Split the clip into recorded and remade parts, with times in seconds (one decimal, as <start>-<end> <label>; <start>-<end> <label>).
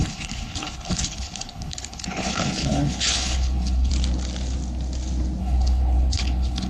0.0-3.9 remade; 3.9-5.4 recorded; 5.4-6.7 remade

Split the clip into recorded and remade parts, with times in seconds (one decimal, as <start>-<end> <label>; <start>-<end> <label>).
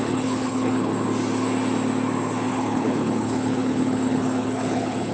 0.0-0.9 remade; 0.9-2.5 recorded; 2.5-5.1 remade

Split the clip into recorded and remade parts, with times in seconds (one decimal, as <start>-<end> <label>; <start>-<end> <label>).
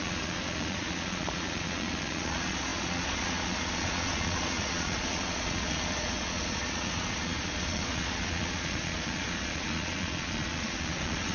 0.0-11.3 remade